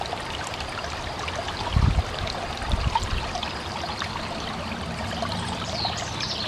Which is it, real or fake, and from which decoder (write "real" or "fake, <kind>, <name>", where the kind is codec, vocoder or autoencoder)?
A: real